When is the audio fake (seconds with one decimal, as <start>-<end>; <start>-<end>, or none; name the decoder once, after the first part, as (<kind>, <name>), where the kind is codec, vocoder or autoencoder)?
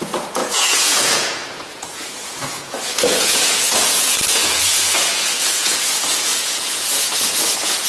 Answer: 0.0-7.9 (vocoder, Vocos)